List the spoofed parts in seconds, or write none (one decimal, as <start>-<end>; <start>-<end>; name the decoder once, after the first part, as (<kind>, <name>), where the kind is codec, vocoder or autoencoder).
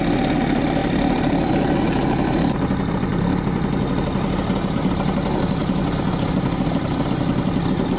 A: 0.8-1.5 (vocoder, BigVGAN v2); 3.1-3.9; 5.6-7.0